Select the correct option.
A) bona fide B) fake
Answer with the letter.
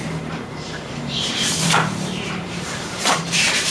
B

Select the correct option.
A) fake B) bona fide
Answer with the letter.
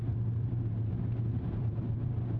A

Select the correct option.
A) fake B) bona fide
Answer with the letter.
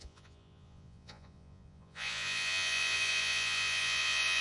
A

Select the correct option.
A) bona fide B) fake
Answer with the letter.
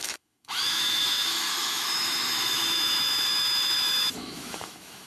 B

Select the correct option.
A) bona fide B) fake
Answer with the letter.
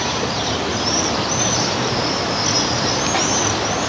A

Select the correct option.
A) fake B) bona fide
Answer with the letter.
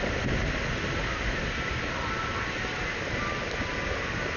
B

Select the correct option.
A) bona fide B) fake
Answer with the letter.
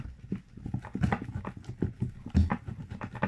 A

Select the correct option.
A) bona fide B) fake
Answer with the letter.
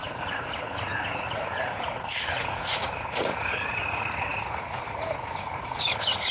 B